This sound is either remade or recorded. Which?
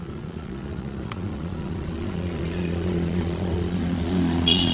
remade